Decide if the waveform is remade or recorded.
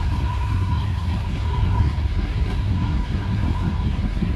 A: remade